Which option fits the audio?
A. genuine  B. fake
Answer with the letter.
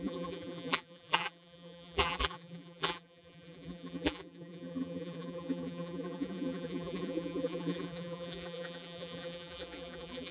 B